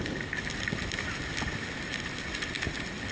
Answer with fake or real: real